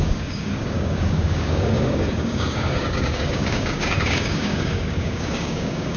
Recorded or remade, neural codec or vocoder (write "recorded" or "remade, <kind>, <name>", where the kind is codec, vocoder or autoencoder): remade, codec, DAC